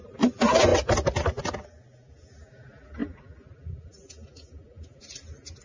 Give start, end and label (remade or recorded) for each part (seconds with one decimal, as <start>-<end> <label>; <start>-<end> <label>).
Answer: 0.0-5.6 recorded